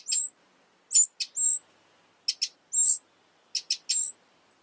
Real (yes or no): yes